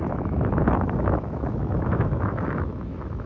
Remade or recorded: remade